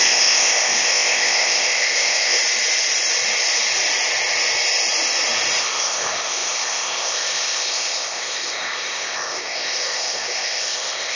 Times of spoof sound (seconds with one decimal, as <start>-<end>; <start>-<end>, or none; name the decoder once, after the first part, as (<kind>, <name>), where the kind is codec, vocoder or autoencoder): 0.0-2.4 (codec, ZipCodec); 5.6-11.2